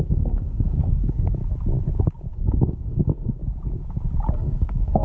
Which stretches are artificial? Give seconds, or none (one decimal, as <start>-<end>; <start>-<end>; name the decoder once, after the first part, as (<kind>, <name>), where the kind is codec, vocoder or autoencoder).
0.0-1.4 (codec, SNAC); 2.3-3.4; 4.3-5.0